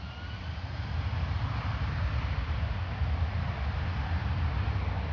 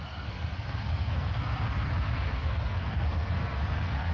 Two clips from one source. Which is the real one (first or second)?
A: first